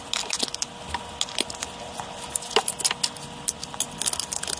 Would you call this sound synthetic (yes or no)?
no